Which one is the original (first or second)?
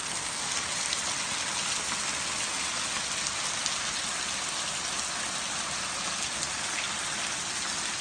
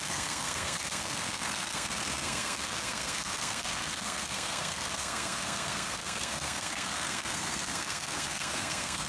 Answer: first